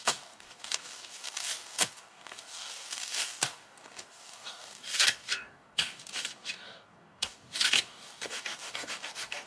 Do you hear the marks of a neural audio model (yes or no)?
yes